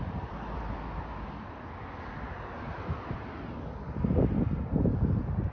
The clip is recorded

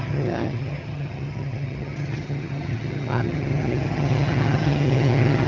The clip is remade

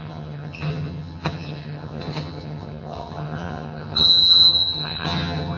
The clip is remade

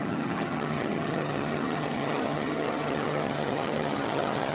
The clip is remade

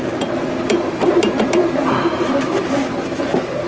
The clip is recorded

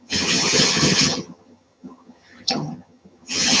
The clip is remade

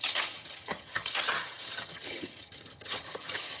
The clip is remade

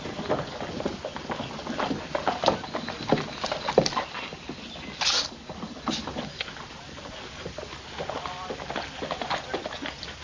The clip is recorded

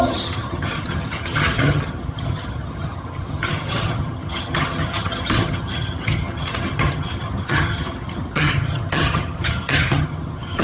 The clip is remade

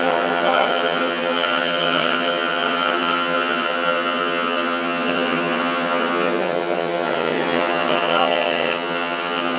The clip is remade